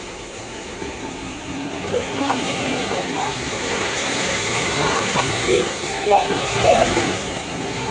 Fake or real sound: fake